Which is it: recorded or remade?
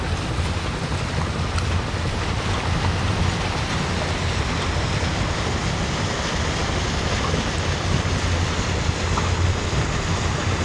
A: recorded